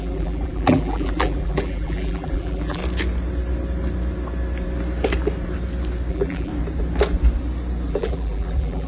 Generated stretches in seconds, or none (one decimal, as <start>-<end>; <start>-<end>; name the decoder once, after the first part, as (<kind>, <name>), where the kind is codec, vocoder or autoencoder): 0.0-2.8 (vocoder, BigVGAN v2); 6.1-6.5; 7.9-8.9